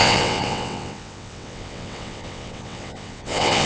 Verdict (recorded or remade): remade